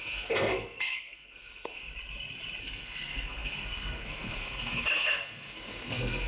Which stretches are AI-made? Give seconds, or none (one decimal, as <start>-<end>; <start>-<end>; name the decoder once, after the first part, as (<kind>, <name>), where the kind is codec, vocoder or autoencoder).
0.0-1.9 (codec, SNAC); 2.6-6.3